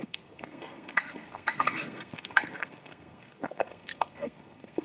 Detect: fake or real fake